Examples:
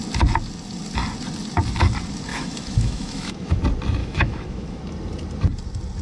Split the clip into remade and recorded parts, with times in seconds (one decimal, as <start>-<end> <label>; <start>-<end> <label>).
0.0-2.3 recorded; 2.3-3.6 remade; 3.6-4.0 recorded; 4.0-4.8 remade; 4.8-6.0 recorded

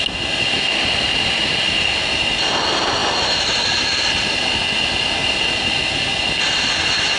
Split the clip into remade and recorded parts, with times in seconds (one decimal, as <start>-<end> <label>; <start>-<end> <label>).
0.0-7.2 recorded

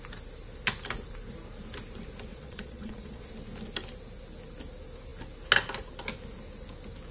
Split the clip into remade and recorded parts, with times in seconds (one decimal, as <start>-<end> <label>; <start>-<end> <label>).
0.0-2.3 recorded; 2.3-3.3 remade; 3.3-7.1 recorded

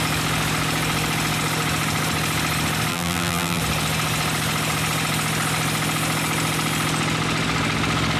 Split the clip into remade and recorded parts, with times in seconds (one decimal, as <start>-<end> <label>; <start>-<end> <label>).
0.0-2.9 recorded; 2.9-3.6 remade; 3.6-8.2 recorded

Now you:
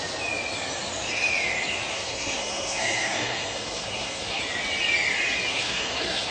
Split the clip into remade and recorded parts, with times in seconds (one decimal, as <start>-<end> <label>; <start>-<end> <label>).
0.0-1.9 recorded; 1.9-4.4 remade; 4.4-5.5 recorded; 5.5-6.3 remade